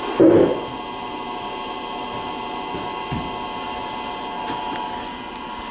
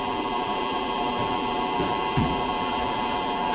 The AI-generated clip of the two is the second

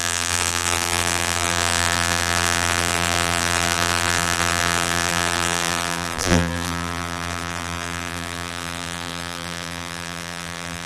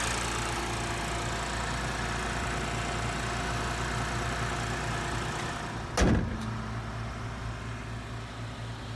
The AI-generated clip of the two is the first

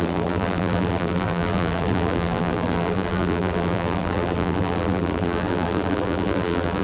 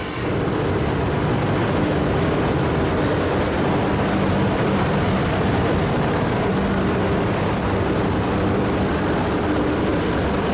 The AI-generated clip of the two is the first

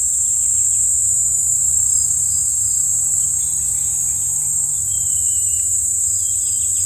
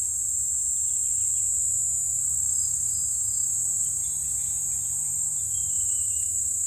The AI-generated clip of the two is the first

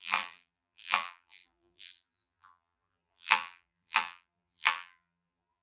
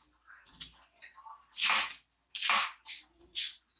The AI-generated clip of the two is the first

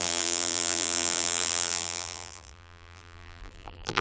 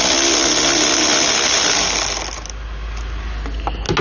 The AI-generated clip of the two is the first